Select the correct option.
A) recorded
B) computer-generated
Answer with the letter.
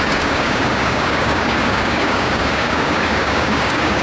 B